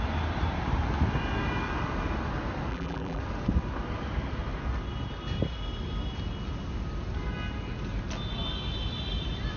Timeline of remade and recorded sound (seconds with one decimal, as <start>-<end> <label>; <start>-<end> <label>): 0.0-2.7 recorded; 2.7-3.2 remade; 3.2-9.6 recorded